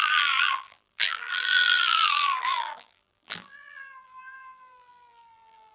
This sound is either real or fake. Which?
fake